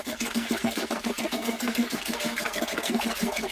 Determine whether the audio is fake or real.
fake